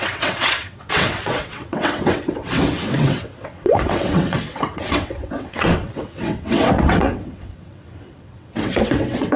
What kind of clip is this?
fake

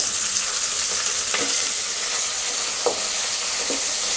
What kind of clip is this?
real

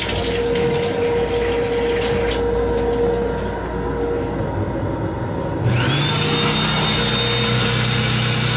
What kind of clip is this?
real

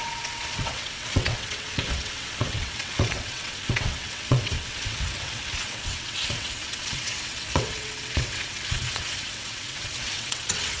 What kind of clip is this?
fake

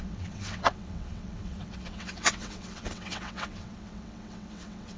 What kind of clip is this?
fake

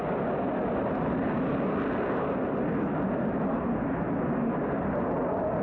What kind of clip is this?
real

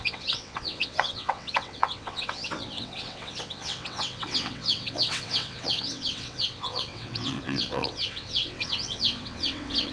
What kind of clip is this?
fake